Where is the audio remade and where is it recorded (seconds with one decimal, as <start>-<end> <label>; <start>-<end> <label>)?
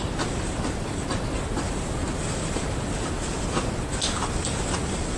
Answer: 0.0-5.2 recorded